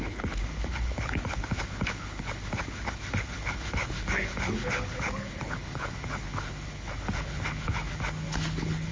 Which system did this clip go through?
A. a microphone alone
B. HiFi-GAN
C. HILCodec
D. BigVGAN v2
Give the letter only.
C